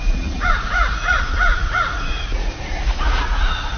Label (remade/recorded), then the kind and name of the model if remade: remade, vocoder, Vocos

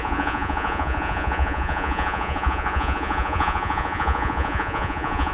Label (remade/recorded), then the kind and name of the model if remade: remade, vocoder, Vocos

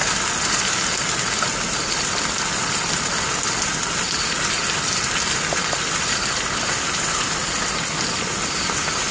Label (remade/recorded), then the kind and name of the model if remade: recorded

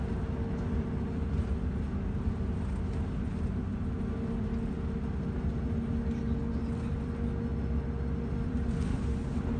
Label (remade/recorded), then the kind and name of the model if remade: recorded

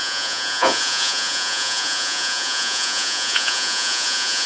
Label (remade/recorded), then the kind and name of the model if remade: remade, vocoder, Vocos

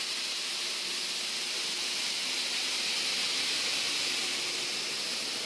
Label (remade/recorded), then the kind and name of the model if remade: recorded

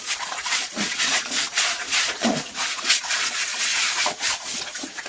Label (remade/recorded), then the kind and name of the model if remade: remade, vocoder, Vocos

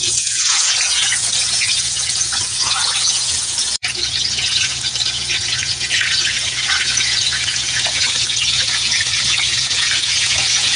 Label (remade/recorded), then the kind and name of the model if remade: remade, vocoder, Vocos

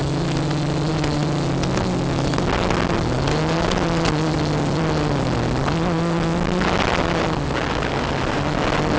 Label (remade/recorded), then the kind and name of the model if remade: recorded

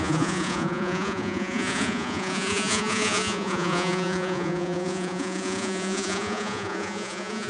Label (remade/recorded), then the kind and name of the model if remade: remade, vocoder, Vocos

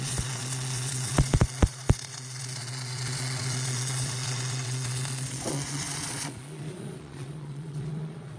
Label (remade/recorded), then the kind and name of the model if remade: remade, vocoder, Vocos